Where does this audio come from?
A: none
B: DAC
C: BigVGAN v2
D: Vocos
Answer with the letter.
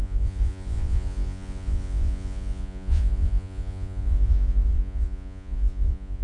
D